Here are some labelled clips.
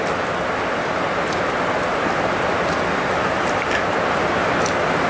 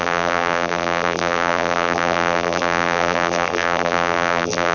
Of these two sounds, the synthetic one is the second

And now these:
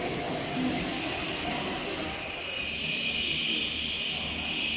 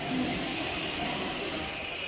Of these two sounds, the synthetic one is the second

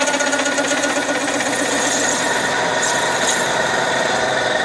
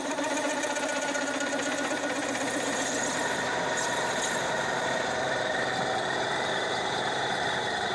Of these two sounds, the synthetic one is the second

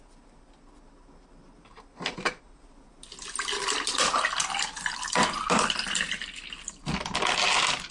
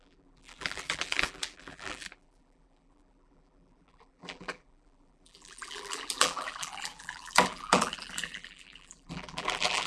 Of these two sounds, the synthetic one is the second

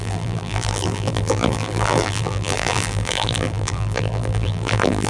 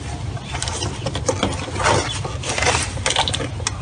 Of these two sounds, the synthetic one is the first